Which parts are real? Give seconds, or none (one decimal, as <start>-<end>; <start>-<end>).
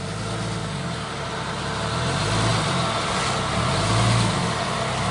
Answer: 0.0-0.6; 1.3-5.1